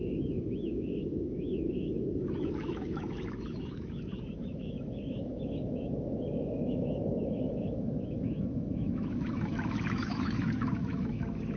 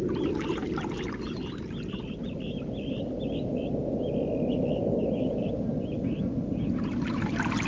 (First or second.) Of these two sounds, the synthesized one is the first